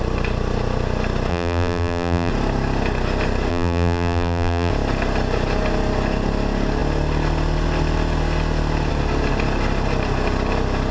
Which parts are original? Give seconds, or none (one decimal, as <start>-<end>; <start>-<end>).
0.0-1.3; 2.3-3.5; 4.7-10.9